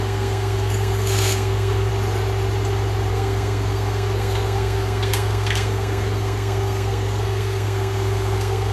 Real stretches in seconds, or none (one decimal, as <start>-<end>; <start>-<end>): 1.9-3.1